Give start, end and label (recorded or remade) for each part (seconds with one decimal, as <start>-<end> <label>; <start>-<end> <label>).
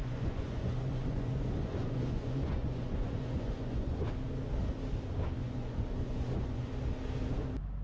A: 0.0-4.0 remade; 4.0-5.4 recorded; 5.4-6.7 remade; 6.7-7.8 recorded